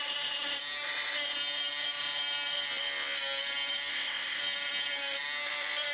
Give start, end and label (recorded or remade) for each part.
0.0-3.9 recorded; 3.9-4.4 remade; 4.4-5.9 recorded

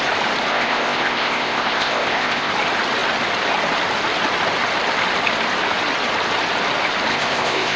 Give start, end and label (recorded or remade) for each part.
0.0-0.5 recorded; 0.5-2.5 remade; 2.5-7.1 recorded; 7.1-7.8 remade

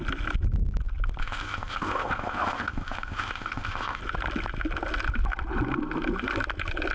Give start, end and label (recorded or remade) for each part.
0.0-1.2 recorded; 1.2-4.0 remade; 4.0-6.9 recorded